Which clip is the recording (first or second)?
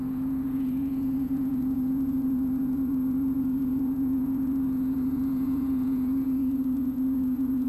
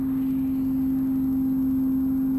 second